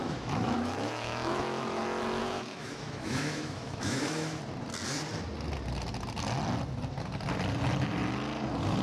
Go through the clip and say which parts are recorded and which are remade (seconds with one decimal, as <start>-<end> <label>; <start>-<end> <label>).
0.0-1.8 remade; 1.8-2.2 recorded; 2.2-4.4 remade; 4.4-8.8 recorded